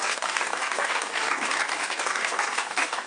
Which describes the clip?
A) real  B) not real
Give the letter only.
B